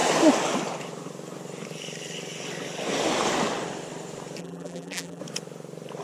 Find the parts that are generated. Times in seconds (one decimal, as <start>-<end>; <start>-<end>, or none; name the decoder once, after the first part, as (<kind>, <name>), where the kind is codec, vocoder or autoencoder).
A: 4.4-5.2 (vocoder, BigVGAN v2)